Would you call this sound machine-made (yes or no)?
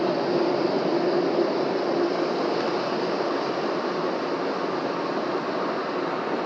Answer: no